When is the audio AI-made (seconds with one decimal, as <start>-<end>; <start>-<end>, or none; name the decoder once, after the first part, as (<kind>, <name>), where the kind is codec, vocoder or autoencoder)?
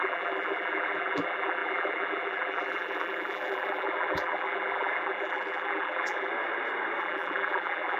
0.0-6.3 (vocoder, BigVGAN v2); 7.0-8.0